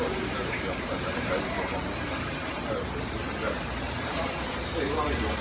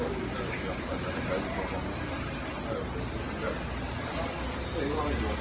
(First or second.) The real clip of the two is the second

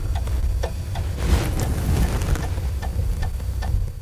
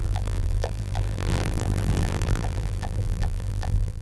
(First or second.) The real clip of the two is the first